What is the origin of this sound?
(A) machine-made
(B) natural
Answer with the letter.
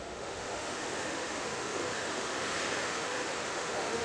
A